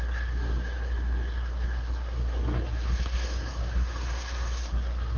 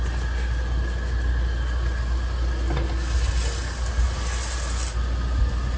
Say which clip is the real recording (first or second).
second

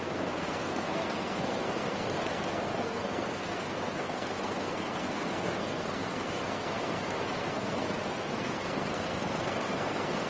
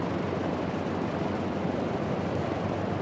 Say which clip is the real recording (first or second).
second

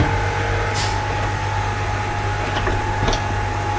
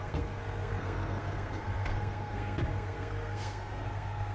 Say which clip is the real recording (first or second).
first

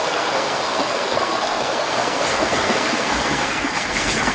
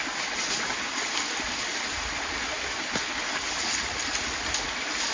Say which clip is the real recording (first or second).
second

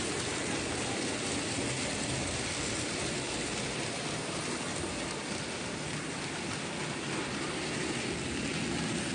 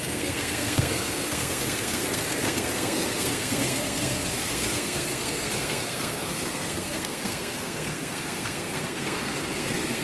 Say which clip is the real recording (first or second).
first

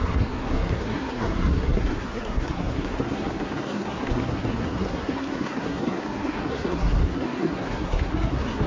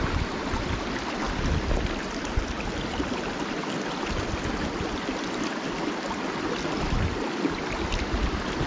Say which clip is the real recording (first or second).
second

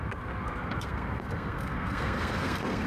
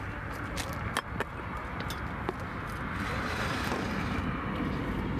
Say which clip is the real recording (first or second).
second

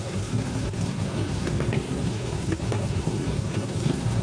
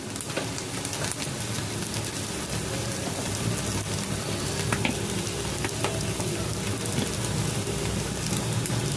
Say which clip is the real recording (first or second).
second